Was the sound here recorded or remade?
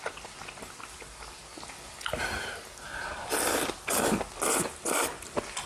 recorded